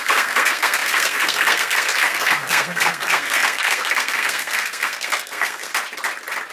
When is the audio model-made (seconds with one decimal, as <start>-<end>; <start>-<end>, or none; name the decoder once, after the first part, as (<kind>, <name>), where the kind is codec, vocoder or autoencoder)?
0.0-5.7 (codec, SNAC)